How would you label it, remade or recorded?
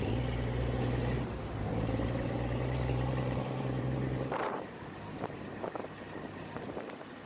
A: remade